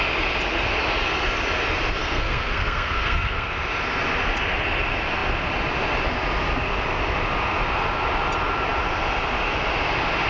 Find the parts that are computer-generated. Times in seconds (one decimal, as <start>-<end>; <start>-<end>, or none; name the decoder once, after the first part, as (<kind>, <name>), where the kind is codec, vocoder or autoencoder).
2.0-3.5 (codec, SNAC)